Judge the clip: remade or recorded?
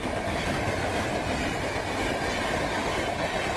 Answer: recorded